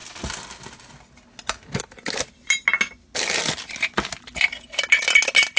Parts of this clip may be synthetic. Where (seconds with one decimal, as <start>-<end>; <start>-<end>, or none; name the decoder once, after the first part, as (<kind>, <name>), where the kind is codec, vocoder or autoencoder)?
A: none